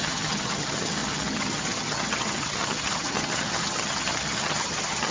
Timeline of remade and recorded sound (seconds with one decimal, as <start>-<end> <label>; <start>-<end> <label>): 0.0-5.1 remade